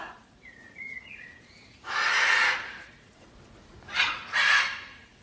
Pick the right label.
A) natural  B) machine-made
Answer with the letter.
B